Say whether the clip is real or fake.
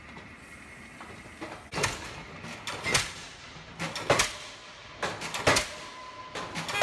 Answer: real